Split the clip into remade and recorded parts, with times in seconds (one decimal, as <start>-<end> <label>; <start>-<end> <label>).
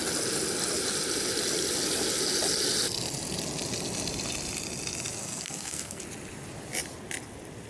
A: 0.0-5.2 recorded; 5.2-6.0 remade; 6.0-7.7 recorded